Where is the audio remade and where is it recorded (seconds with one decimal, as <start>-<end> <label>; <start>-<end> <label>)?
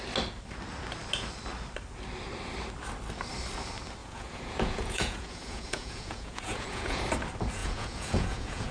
0.0-4.0 recorded; 4.0-7.0 remade; 7.0-7.6 recorded; 7.6-8.7 remade